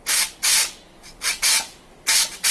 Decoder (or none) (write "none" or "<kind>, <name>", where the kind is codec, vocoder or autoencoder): none